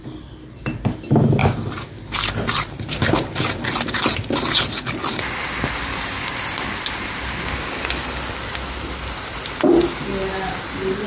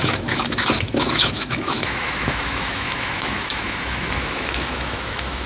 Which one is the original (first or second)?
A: first